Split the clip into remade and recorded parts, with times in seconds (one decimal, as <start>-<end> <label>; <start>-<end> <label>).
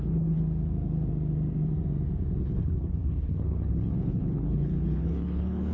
0.0-0.4 remade; 0.4-2.4 recorded; 2.4-5.7 remade